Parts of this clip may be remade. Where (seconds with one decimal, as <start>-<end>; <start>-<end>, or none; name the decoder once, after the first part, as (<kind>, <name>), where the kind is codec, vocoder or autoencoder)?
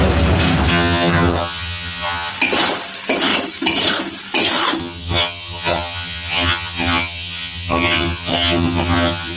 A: 0.7-2.3 (vocoder, HiFi-GAN); 4.8-9.4